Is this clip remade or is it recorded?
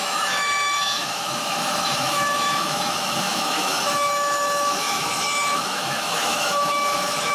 remade